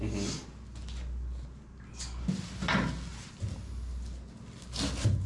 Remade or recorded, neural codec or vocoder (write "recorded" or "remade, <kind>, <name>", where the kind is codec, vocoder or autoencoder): recorded